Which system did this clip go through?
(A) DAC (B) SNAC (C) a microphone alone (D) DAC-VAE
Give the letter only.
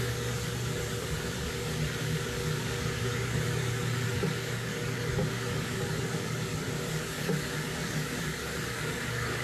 A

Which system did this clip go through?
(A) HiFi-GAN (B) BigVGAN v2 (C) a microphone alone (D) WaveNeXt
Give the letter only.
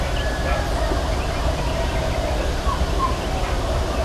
C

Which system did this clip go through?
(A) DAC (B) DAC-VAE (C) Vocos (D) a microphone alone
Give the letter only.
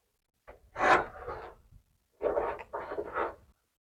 D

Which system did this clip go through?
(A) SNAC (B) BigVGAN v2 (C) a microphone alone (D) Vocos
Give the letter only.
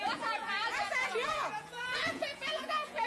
D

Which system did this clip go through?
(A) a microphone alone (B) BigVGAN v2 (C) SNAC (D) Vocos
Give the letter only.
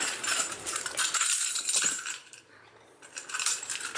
B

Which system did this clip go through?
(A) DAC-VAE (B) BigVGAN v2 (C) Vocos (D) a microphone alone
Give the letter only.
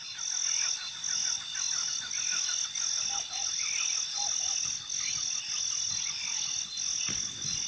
D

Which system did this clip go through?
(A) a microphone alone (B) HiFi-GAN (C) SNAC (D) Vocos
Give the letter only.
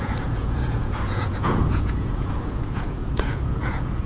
D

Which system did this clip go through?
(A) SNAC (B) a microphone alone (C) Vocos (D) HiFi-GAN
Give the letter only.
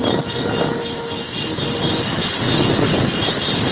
B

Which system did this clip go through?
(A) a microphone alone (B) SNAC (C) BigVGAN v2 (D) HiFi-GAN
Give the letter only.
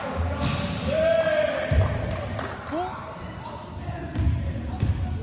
A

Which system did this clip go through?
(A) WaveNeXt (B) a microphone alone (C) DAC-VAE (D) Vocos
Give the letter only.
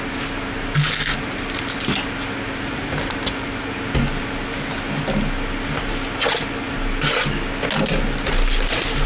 B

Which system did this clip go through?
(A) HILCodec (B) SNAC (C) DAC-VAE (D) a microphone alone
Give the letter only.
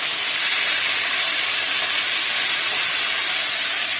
D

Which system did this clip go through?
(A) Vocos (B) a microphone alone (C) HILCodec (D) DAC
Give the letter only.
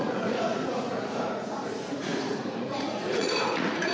A